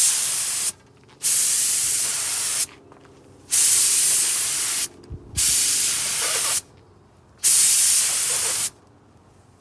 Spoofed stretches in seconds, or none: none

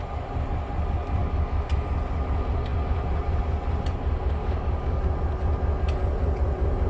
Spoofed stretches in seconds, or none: 1.2-1.7 (codec, DAC); 4.4-5.0

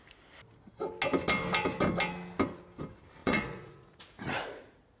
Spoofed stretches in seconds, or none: 3.2-5.0 (vocoder, Vocos)

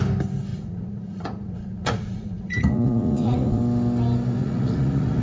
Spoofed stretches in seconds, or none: 0.5-3.6 (vocoder, Vocos); 4.4-5.2

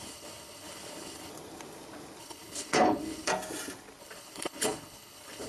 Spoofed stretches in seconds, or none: 0.0-1.3 (codec, HILCodec); 2.2-3.3; 4.0-5.5

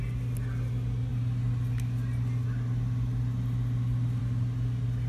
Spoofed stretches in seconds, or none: none

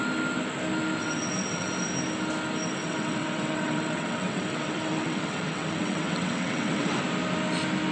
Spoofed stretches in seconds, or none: 1.0-1.7 (vocoder, WaveNeXt); 2.8-7.0

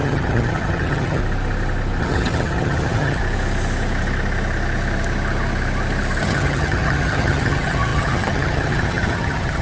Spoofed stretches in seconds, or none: 0.0-1.2 (vocoder, HiFi-GAN); 2.0-3.2; 6.2-9.6